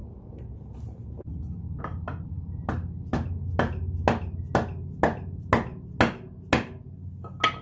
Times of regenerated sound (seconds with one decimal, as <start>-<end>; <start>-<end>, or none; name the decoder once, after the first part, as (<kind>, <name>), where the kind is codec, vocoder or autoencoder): 0.0-1.8 (vocoder, BigVGAN v2)